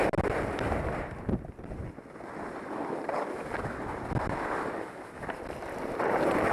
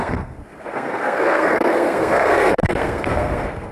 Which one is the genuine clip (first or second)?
first